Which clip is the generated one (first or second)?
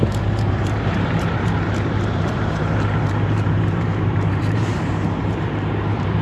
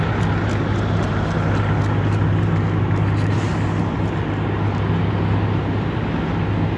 first